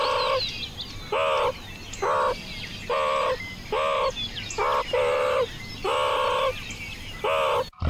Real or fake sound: real